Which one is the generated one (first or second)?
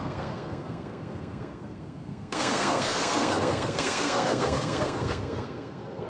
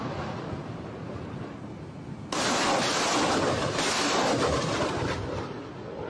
first